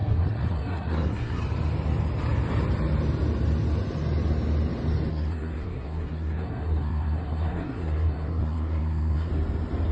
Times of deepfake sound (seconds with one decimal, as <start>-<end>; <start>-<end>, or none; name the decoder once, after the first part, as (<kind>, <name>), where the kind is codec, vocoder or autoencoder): 0.0-1.4 (codec, SNAC); 5.1-9.3